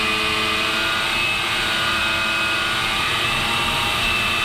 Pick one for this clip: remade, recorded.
recorded